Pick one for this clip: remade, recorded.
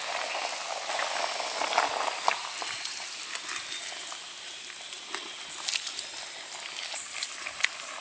recorded